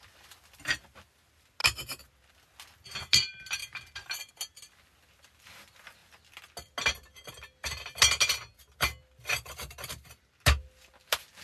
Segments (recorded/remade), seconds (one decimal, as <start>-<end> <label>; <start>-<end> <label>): 0.0-3.6 recorded; 3.6-4.3 remade; 4.3-11.4 recorded